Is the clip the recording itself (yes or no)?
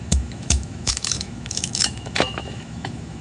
no